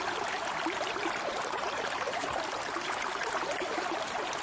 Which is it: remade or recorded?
remade